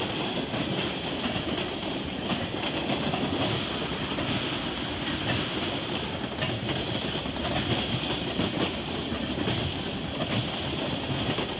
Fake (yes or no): no